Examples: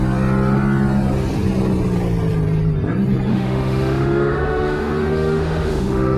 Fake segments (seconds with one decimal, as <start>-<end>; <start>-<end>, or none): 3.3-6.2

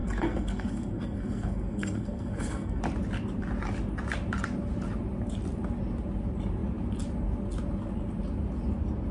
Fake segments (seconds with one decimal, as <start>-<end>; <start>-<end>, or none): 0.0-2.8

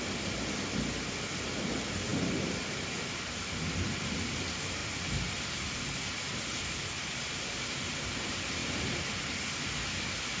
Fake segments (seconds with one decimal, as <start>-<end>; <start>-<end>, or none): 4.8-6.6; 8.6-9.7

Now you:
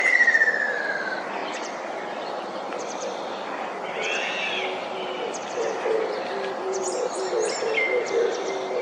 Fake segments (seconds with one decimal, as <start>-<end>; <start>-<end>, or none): none

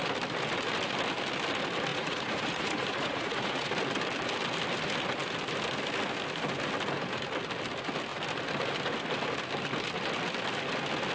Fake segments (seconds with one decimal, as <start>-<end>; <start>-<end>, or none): 1.9-3.7